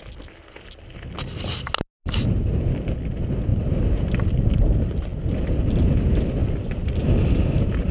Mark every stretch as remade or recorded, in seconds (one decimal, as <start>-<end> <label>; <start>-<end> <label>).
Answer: 0.0-5.1 recorded; 5.1-5.6 remade; 5.6-6.4 recorded; 6.4-7.3 remade; 7.3-7.9 recorded